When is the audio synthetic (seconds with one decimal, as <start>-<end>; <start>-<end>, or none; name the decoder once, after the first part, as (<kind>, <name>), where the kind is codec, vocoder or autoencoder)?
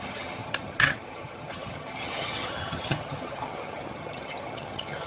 0.0-5.1 (vocoder, HiFi-GAN)